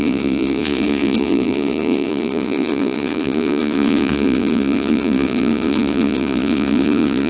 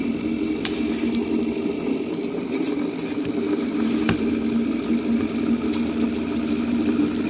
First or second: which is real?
second